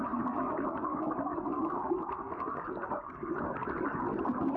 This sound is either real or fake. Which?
real